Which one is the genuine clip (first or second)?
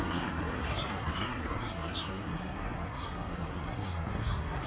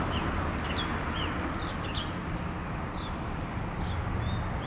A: second